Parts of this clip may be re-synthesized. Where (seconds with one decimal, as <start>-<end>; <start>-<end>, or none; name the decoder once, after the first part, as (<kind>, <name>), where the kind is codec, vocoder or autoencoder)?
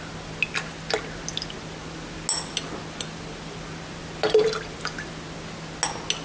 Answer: none